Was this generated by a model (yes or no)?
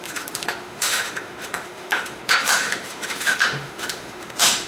yes